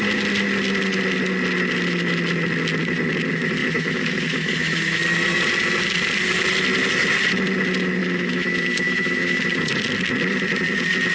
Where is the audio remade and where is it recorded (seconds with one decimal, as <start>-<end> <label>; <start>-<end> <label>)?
0.0-3.6 recorded; 3.6-5.0 remade; 5.0-8.0 recorded; 8.0-9.4 remade; 9.4-11.1 recorded